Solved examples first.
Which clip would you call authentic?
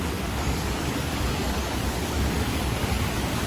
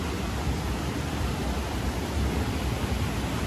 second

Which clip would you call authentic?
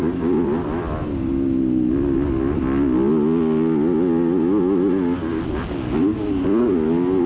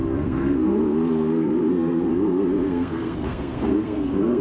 first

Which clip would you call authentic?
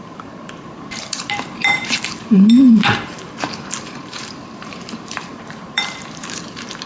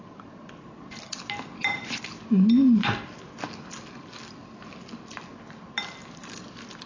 second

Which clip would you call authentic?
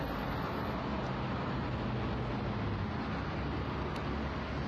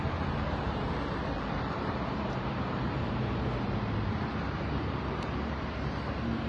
first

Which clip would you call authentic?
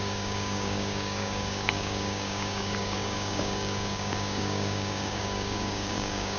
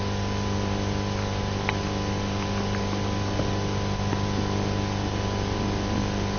second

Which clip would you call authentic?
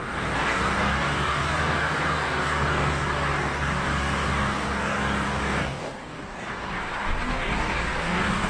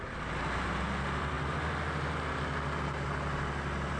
second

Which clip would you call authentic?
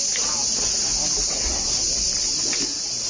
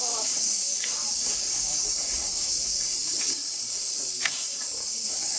first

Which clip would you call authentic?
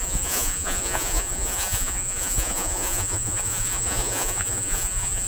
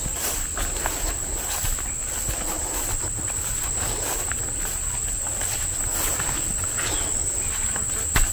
second